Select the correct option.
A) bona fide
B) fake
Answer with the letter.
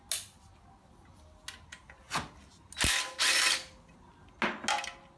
A